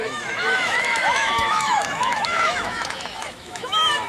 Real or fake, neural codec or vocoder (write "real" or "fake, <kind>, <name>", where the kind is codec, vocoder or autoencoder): fake, autoencoder, DAC-VAE